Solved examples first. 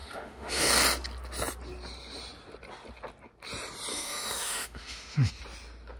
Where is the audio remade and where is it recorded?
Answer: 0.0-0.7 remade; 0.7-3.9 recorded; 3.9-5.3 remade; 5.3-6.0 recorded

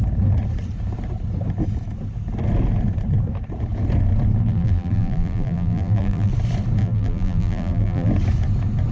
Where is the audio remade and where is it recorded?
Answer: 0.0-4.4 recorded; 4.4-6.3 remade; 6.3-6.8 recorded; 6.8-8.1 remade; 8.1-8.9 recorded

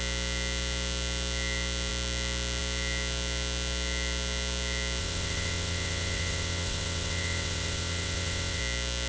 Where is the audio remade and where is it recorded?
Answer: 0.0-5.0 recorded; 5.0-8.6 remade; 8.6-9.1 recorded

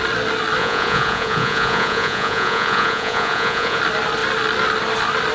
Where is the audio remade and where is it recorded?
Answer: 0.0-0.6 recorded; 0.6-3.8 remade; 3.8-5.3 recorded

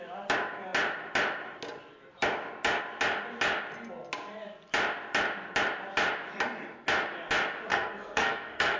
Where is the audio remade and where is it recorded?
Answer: 0.0-7.7 recorded; 7.7-8.8 remade